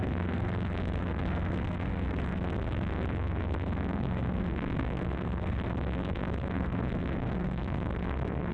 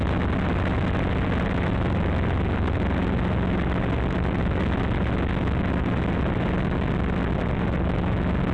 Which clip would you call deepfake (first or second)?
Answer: first